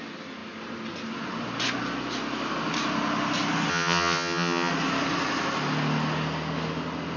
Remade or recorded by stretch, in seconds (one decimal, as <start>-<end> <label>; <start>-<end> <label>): 0.0-3.7 recorded; 3.7-4.7 remade; 4.7-7.2 recorded